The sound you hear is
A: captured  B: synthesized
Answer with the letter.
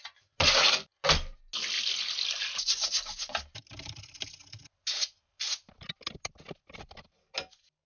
A